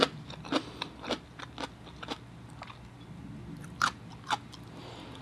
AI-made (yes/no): no